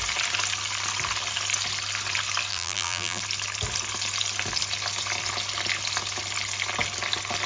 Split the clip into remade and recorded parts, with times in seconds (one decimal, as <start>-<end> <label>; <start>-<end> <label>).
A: 0.0-2.5 recorded; 2.5-3.2 remade; 3.2-7.5 recorded